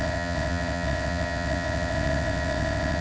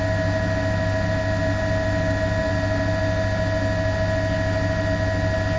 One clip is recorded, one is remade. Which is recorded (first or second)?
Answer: second